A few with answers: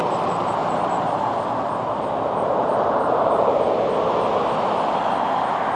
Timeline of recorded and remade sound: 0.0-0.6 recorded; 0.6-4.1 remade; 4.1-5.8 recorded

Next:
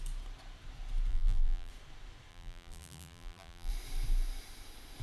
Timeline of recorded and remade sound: 0.0-1.1 recorded; 1.1-1.7 remade; 1.7-2.3 recorded; 2.3-3.7 remade; 3.7-5.0 recorded

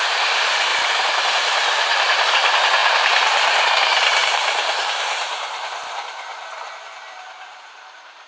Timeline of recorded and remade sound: 0.0-6.3 remade; 6.3-6.8 recorded; 6.8-8.3 remade

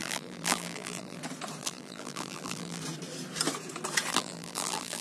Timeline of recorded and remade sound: 0.0-1.2 remade; 1.2-1.6 recorded; 1.6-2.8 remade; 2.8-4.1 recorded; 4.1-5.0 remade

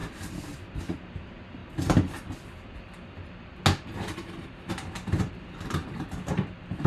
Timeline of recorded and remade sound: 0.0-1.6 remade; 1.6-5.3 recorded; 5.3-5.8 remade; 5.8-6.3 recorded; 6.3-6.9 remade

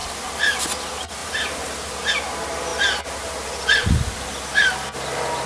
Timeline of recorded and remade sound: 0.0-1.2 recorded; 1.2-2.1 remade; 2.1-5.5 recorded

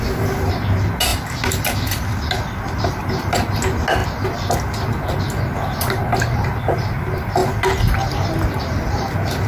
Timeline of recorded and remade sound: 0.0-9.5 recorded

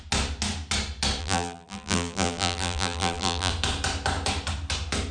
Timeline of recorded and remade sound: 0.0-1.2 recorded; 1.2-3.5 remade; 3.5-5.1 recorded